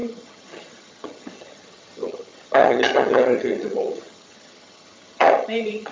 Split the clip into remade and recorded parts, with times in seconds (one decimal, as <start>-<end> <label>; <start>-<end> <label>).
0.0-5.9 remade